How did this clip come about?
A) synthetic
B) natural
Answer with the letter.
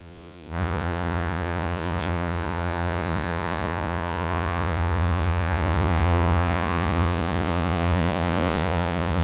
A